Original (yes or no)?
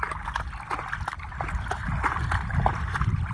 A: yes